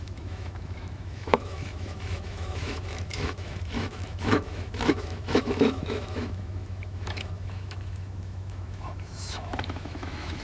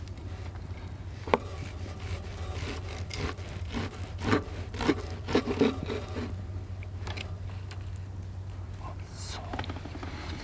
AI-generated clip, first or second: first